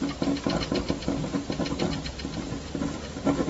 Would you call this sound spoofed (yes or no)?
no